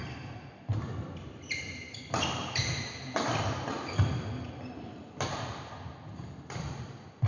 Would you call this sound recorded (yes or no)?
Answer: yes